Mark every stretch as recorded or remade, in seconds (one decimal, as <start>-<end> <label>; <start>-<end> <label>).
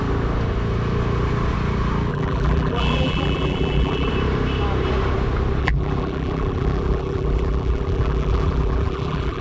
0.0-2.1 recorded; 2.1-4.1 remade; 4.1-5.6 recorded; 5.6-9.4 remade